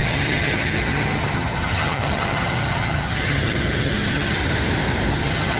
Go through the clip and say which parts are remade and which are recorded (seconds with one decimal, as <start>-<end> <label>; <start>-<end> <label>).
0.0-4.4 remade; 4.4-5.1 recorded; 5.1-5.6 remade